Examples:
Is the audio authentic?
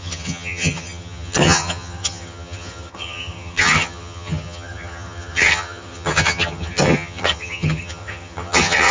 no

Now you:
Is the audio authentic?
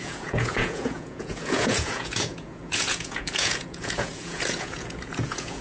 no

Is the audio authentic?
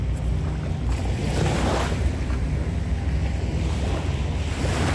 yes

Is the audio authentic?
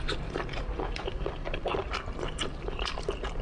no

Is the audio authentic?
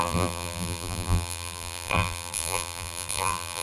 no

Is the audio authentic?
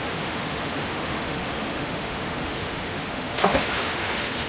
no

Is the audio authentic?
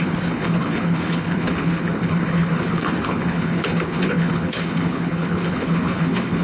no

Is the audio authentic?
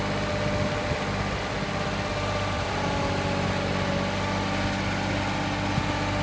yes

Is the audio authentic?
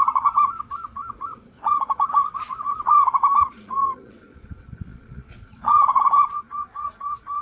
no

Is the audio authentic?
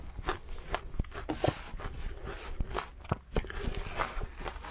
yes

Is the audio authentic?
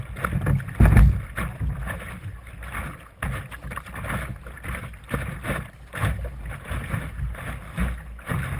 yes